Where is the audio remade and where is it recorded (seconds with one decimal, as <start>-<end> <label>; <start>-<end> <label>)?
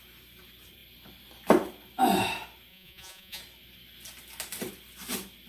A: 0.0-2.7 recorded; 2.7-3.4 remade; 3.4-5.5 recorded